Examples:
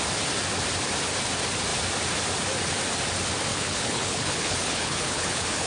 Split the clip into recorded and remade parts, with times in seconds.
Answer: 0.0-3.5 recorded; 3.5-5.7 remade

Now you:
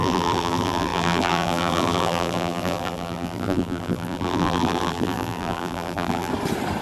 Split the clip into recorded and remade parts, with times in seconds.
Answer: 0.0-6.3 remade; 6.3-6.8 recorded

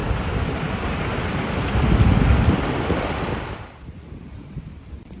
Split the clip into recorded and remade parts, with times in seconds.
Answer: 0.0-5.2 recorded

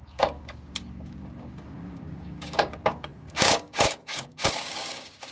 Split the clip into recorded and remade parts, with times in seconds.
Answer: 0.0-5.3 remade

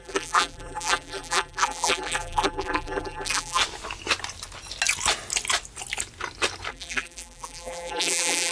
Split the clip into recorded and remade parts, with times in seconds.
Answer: 0.0-3.6 remade; 3.6-6.7 recorded; 6.7-8.5 remade

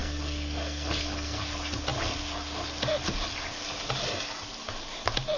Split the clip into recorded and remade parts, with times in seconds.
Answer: 0.0-1.4 remade; 1.4-5.4 recorded

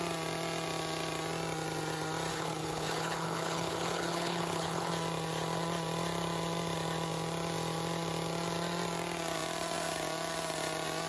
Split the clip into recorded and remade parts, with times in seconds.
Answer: 0.0-2.3 recorded; 2.3-4.9 remade; 4.9-11.1 recorded